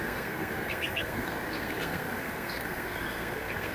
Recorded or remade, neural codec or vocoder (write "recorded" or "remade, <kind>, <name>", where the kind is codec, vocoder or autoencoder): remade, codec, SNAC